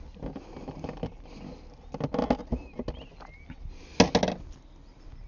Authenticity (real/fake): real